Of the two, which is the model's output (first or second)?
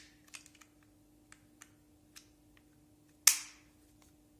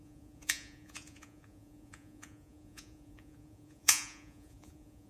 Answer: second